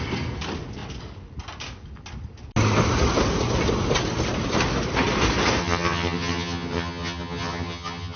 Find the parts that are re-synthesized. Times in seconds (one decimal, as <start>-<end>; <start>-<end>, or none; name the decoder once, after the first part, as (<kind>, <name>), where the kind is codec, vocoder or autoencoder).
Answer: 5.6-8.2 (vocoder, HiFi-GAN)